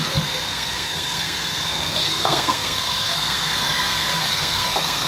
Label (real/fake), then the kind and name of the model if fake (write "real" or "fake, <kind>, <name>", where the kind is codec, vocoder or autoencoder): fake, codec, SNAC